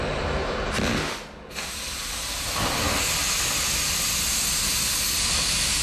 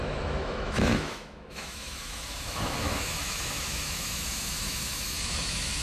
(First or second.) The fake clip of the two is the second